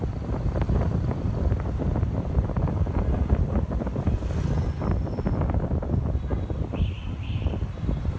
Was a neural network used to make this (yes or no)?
yes